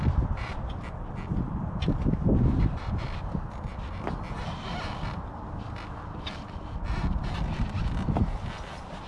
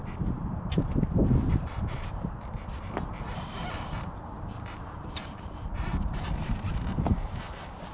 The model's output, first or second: second